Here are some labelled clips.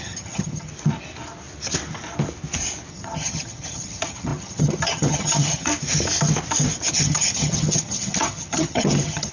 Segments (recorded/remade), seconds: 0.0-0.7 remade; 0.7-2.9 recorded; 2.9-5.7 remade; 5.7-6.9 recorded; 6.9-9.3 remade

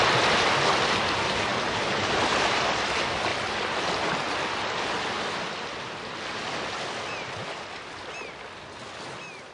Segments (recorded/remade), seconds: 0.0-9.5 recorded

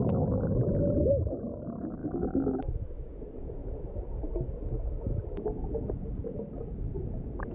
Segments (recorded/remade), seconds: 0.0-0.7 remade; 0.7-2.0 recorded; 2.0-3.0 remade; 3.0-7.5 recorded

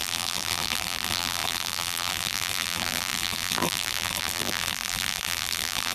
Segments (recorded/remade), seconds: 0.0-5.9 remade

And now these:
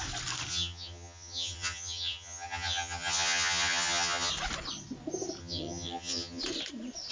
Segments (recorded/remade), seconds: 0.0-0.5 recorded; 0.5-4.3 remade; 4.3-5.4 recorded; 5.4-6.4 remade; 6.4-7.1 recorded